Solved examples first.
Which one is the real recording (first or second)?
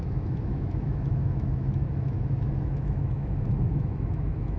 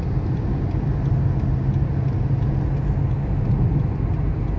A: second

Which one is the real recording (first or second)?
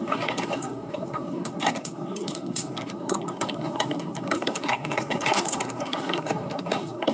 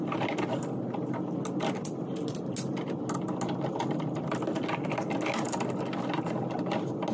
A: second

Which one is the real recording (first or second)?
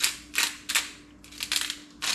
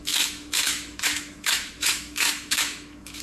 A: first